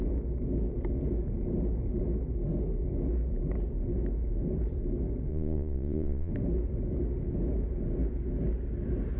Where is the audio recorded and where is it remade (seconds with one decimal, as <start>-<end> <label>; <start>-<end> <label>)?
0.0-5.3 recorded; 5.3-6.3 remade; 6.3-9.2 recorded